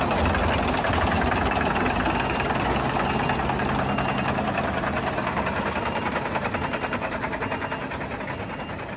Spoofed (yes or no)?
no